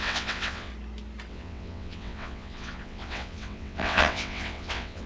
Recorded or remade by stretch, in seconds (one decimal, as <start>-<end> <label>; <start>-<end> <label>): 0.0-0.7 remade; 0.7-1.3 recorded; 1.3-5.1 remade